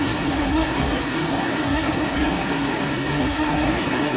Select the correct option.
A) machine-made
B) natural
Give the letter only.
A